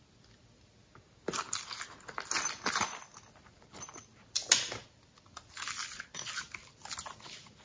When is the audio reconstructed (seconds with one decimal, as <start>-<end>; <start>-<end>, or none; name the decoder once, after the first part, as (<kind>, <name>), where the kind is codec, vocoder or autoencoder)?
none